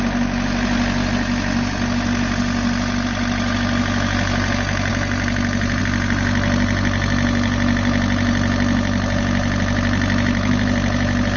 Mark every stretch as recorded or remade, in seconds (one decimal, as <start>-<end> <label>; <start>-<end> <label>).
0.0-11.4 recorded